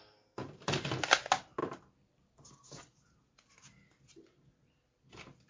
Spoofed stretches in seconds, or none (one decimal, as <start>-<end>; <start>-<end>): 0.4-0.9